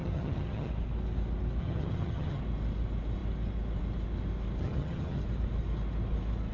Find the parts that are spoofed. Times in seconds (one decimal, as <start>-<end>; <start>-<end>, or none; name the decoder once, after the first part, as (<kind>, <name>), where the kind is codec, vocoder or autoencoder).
0.0-0.7 (vocoder, HiFi-GAN); 1.6-2.4; 4.6-5.2